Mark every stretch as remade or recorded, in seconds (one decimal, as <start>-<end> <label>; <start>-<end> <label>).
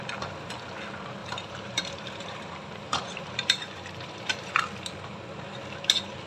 0.0-1.2 recorded; 1.2-4.5 remade; 4.5-6.3 recorded